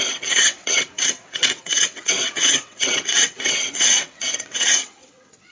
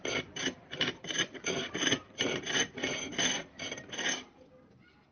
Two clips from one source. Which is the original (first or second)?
second